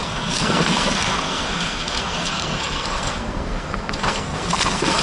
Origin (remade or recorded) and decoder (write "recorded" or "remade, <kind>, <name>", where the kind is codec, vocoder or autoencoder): remade, codec, SNAC